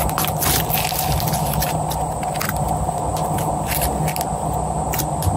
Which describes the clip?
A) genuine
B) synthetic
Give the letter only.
A